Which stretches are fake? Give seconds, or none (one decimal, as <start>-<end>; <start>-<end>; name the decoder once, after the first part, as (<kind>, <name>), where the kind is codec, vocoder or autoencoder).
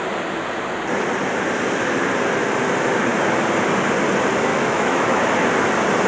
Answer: 4.5-5.2 (autoencoder, DAC-VAE)